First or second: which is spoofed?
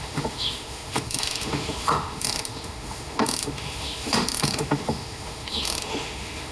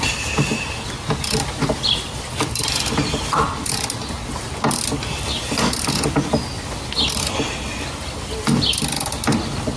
first